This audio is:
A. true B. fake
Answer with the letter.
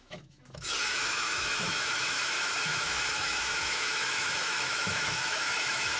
B